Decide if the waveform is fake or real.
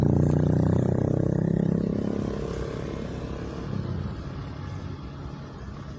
real